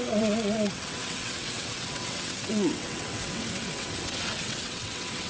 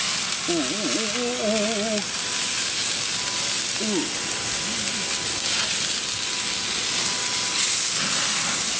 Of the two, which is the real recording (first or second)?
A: second